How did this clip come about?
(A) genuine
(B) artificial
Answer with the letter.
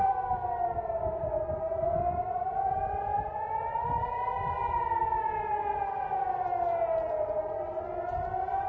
A